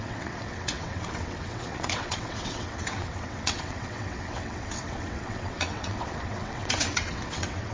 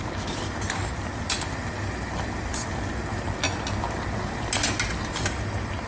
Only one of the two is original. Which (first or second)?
second